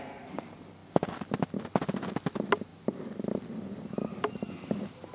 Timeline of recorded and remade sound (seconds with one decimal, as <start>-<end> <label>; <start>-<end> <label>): 0.0-5.1 recorded

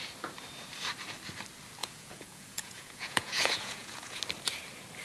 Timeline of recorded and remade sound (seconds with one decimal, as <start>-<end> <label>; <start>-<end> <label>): 0.0-1.8 recorded; 1.8-4.2 remade; 4.2-5.0 recorded

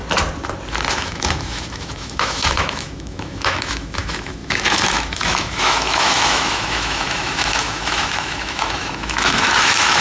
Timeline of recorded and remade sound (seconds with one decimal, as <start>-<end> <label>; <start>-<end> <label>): 0.0-0.9 recorded; 0.9-10.0 remade

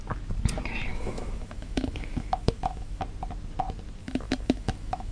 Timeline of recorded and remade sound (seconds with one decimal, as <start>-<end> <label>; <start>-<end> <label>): 0.0-0.9 recorded; 0.9-3.0 remade; 3.0-4.0 recorded; 4.0-5.1 remade

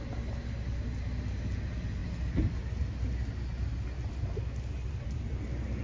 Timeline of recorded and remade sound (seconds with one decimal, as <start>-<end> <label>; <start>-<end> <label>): 0.0-5.8 recorded